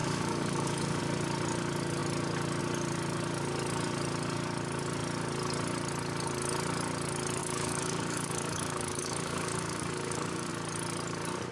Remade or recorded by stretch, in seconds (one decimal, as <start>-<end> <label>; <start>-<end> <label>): 0.0-1.0 remade; 1.0-7.4 recorded; 7.4-10.5 remade; 10.5-11.5 recorded